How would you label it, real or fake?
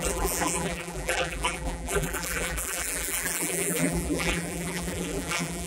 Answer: fake